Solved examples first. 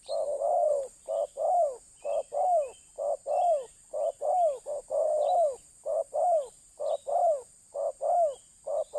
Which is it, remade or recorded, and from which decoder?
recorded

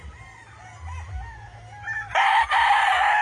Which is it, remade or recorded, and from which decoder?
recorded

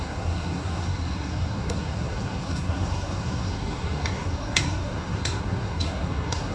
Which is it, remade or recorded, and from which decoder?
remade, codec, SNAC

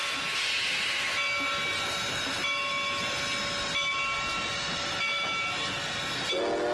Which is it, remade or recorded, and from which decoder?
recorded